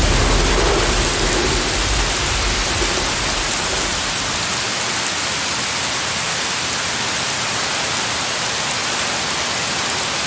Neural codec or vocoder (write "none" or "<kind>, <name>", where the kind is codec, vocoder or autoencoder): none